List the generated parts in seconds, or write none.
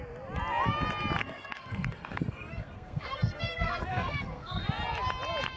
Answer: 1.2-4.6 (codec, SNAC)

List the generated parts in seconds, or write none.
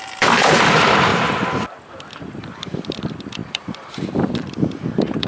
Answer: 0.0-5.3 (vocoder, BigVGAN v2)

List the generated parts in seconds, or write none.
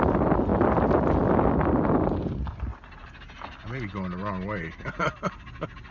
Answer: none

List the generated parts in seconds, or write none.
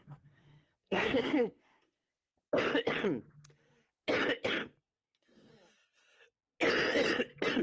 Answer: 0.0-2.1 (codec, SNAC); 4.8-5.5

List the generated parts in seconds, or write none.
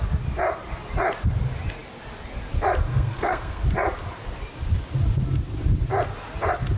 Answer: 2.9-3.6 (codec, SNAC)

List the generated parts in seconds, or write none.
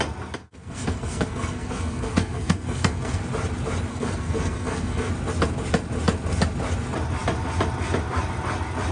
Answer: 0.4-3.2 (codec, SNAC); 3.9-5.1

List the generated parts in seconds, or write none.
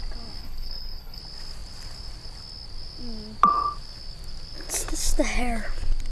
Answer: 0.4-1.2 (codec, HILCodec)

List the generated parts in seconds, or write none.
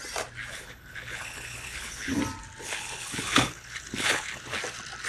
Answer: 0.5-2.2 (codec, HILCodec); 2.6-4.6